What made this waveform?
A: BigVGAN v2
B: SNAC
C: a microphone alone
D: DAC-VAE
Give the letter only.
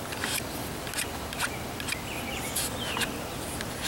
C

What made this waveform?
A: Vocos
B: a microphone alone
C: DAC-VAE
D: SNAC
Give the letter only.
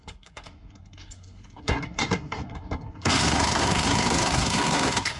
D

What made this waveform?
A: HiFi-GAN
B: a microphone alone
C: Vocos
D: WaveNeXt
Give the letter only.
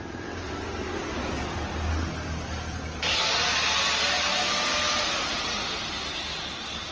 B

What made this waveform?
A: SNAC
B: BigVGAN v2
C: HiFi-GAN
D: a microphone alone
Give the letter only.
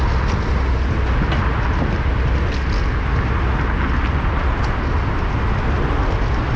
D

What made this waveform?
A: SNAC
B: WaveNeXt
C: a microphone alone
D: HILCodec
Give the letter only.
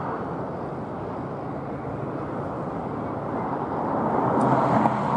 C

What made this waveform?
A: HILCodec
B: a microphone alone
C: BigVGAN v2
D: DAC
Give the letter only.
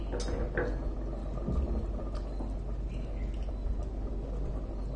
B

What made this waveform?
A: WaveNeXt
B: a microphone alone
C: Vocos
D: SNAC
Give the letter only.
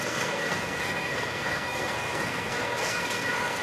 D